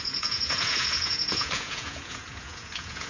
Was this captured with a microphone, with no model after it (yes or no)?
no